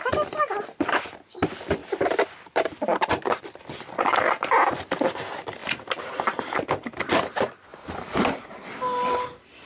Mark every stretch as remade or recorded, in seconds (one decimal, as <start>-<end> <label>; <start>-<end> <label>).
0.0-1.8 recorded; 1.8-3.4 remade; 3.4-9.7 recorded